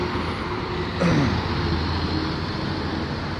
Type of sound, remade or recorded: remade